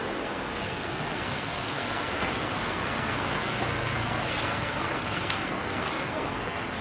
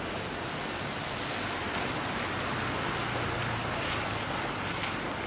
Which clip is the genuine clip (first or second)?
second